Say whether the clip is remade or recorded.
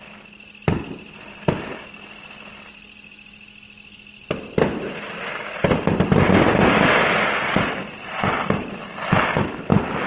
recorded